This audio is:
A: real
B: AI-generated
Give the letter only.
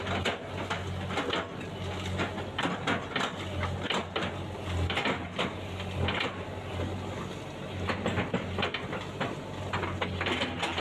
A